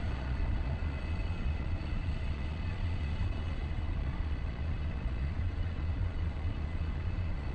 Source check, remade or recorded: remade